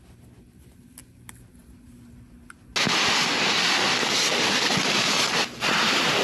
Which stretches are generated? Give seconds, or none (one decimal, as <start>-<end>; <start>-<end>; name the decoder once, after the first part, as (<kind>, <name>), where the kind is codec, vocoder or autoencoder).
none